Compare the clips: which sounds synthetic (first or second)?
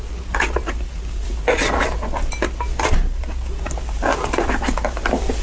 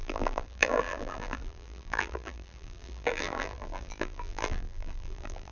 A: second